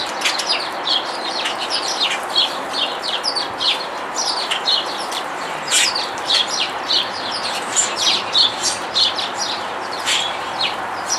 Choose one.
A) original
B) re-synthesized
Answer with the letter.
B